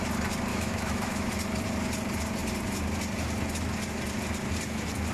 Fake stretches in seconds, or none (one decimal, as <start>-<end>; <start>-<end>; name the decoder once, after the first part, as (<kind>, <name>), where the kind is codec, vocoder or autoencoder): 0.5-1.3 (autoencoder, DAC-VAE)